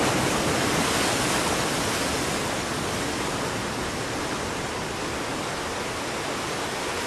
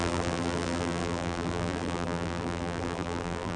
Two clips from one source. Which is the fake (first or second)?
second